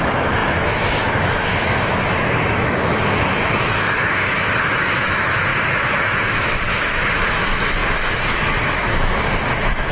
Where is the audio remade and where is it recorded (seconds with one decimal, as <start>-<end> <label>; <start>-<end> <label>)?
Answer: 0.0-9.9 remade